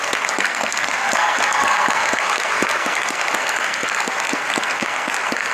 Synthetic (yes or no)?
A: yes